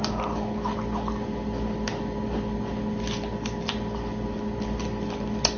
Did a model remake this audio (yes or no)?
no